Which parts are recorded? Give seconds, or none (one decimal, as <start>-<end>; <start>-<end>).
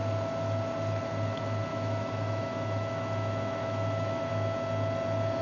0.0-1.7; 4.3-5.4